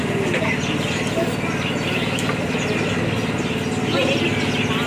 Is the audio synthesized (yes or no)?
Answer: no